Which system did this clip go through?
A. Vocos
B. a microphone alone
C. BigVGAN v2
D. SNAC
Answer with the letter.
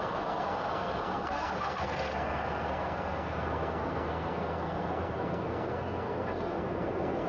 D